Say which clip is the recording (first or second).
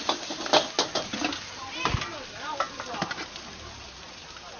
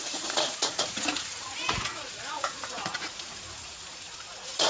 first